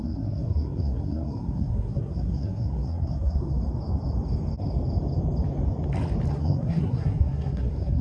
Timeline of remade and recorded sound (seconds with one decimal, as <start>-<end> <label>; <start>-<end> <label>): 0.0-3.6 remade; 3.6-6.3 recorded; 6.3-8.0 remade